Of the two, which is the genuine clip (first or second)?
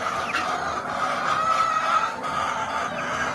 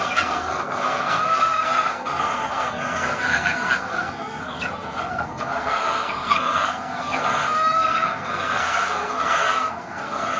first